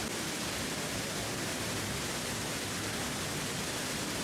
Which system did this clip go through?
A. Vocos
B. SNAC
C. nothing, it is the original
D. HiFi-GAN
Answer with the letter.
C